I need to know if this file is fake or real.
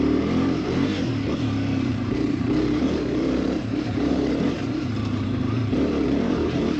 fake